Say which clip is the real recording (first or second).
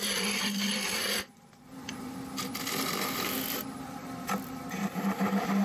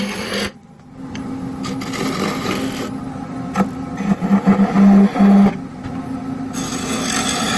second